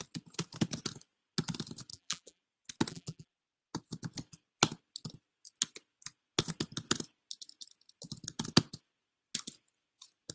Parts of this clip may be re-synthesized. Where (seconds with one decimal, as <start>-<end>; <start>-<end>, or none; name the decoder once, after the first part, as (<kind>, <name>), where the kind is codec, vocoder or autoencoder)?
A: 1.9-2.4 (vocoder, BigVGAN v2); 2.9-3.4